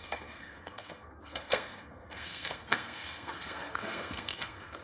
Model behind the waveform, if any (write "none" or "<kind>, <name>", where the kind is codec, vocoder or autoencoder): codec, SNAC